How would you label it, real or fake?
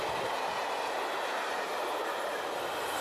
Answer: real